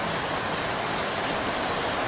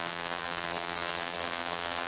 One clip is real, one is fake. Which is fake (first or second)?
second